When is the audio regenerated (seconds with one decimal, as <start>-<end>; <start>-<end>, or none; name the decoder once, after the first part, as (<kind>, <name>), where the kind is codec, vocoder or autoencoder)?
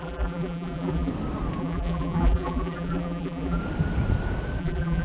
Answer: 0.0-1.1 (vocoder, BigVGAN v2); 1.6-3.6; 4.6-5.0